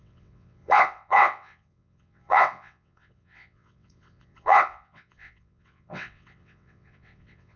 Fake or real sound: fake